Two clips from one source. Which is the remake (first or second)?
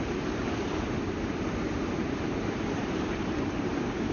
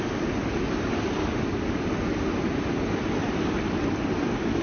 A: first